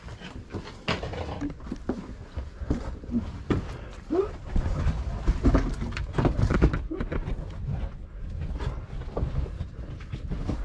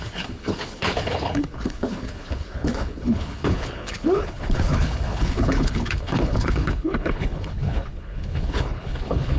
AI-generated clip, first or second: second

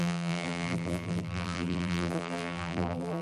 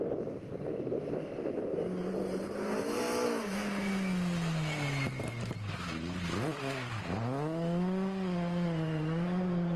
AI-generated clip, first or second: first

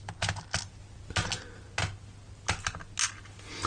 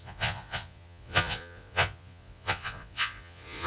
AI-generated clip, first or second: second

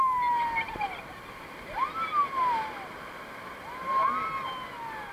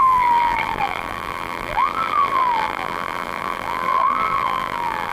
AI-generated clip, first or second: second